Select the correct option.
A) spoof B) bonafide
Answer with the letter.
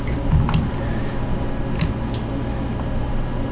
B